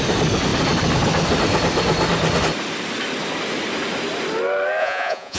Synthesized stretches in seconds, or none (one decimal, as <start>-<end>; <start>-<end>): 4.8-5.4